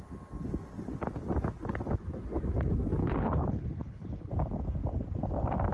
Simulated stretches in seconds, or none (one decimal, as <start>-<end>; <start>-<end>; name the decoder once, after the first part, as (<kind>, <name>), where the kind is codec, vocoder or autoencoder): 3.0-4.3 (codec, HILCodec)